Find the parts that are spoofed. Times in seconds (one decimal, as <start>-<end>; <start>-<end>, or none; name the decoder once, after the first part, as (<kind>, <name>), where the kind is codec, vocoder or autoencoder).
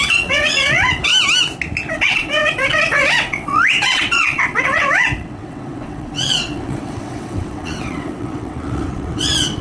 0.0-1.1 (vocoder, WaveNeXt); 1.9-9.6